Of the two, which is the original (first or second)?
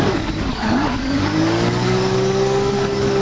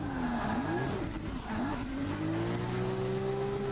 second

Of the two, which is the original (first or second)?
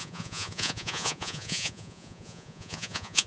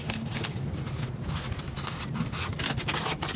second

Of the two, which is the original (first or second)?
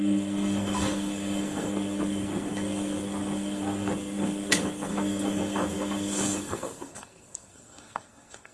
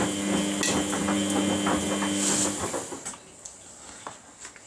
second